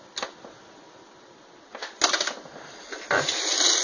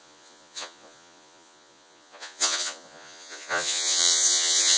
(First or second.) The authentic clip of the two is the first